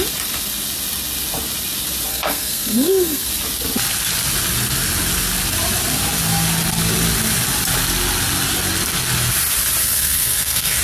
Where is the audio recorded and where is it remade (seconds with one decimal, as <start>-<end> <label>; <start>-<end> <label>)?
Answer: 0.0-2.1 recorded; 2.1-3.3 remade; 3.3-9.8 recorded; 9.8-10.8 remade